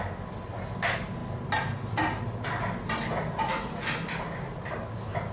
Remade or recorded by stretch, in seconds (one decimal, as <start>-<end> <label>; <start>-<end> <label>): 0.0-5.3 recorded